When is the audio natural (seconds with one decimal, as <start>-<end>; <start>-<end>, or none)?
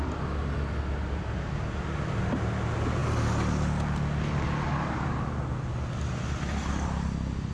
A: 0.0-7.5